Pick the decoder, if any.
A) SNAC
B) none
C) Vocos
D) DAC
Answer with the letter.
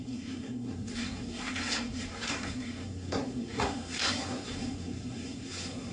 A